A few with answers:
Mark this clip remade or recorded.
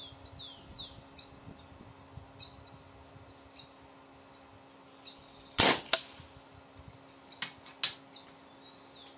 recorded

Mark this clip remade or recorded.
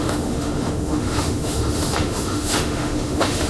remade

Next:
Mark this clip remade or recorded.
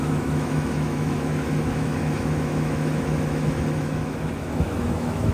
remade